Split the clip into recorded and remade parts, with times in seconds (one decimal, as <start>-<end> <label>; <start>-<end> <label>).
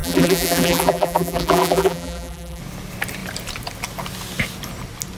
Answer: 0.0-2.6 remade; 2.6-5.2 recorded